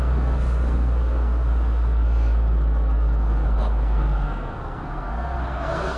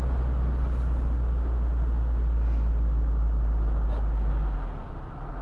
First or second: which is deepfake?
first